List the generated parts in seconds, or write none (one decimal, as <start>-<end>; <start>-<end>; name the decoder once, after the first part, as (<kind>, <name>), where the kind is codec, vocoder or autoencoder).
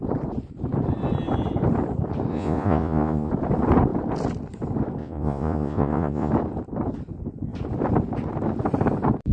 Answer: 2.3-3.3 (vocoder, Vocos); 5.0-6.3